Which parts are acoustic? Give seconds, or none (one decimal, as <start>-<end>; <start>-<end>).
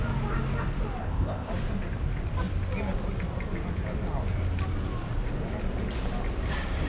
0.0-1.0; 1.5-6.9